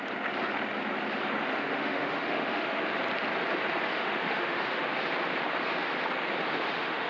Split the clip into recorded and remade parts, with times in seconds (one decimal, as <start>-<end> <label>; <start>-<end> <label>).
0.0-1.5 recorded; 1.5-2.8 remade; 2.8-3.9 recorded; 3.9-4.8 remade; 4.8-6.5 recorded; 6.5-7.1 remade